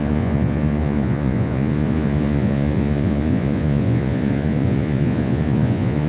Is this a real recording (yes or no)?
no